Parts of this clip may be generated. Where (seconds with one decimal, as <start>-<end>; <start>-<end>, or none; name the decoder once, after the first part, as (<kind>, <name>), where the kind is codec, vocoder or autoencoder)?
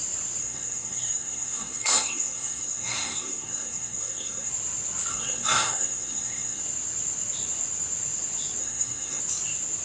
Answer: 0.4-4.5 (codec, SNAC); 5.1-6.6; 8.6-9.2